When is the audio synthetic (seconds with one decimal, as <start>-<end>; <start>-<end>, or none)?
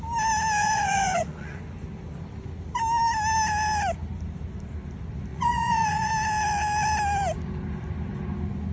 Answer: 0.6-1.6; 5.3-6.1